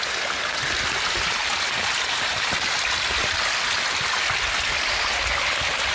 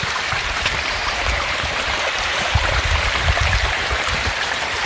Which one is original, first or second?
first